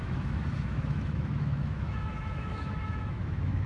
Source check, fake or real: fake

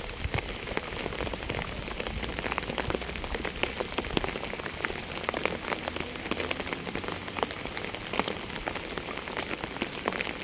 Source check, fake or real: real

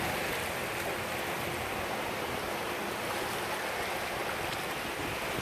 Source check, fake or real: real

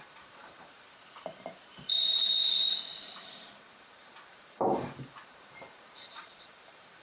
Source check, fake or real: fake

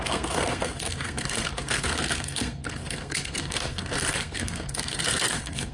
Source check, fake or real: fake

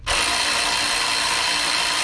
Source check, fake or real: real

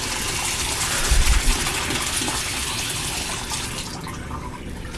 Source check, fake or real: real